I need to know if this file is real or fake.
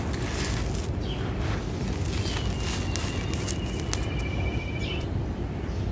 real